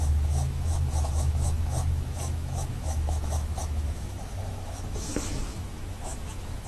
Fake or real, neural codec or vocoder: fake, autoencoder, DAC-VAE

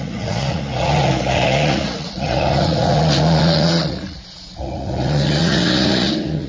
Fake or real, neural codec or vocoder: fake, vocoder, Vocos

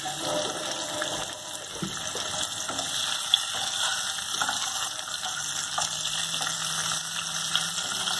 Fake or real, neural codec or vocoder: real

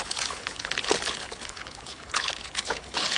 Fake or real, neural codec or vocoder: fake, codec, HILCodec